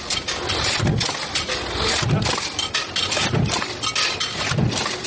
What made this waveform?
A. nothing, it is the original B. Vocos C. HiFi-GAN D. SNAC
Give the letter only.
A